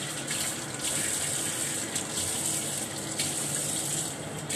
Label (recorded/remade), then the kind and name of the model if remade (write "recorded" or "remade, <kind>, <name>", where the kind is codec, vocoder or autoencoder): recorded